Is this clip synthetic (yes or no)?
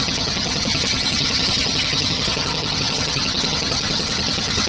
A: yes